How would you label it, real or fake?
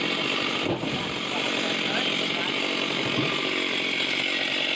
fake